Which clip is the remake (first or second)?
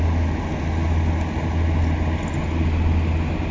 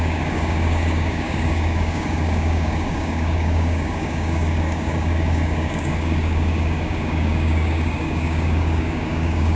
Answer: second